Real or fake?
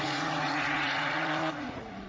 fake